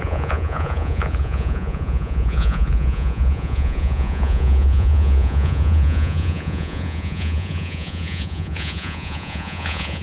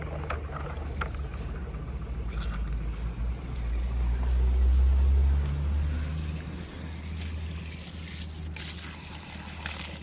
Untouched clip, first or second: second